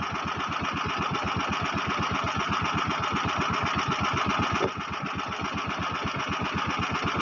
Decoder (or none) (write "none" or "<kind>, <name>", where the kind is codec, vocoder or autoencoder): none